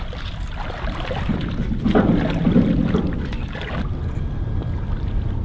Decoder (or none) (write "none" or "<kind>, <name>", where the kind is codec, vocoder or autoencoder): none